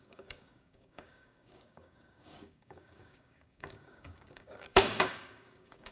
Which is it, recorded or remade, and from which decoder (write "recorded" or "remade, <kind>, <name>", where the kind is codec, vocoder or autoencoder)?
remade, codec, DAC